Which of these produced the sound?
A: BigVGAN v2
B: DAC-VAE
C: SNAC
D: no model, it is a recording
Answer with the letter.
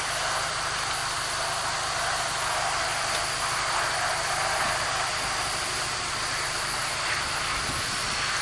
D